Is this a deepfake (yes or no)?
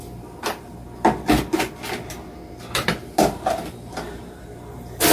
no